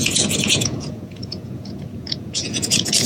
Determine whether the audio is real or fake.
fake